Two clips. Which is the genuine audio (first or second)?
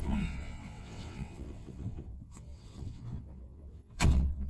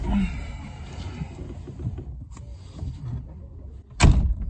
second